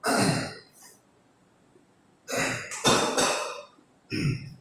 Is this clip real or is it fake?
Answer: real